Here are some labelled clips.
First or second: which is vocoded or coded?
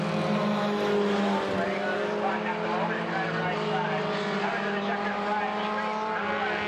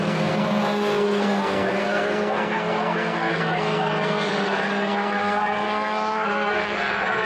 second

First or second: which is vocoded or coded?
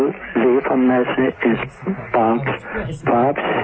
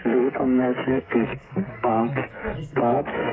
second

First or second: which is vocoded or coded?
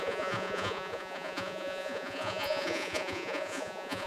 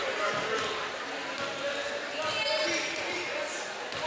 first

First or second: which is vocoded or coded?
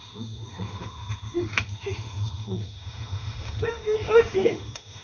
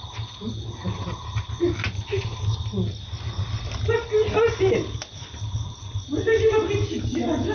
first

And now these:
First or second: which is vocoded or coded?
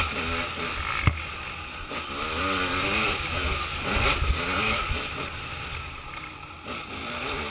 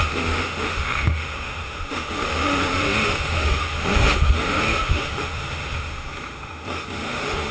second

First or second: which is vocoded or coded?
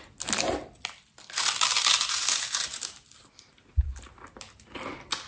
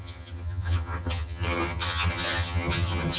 second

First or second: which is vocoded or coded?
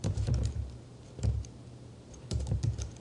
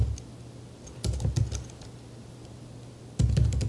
first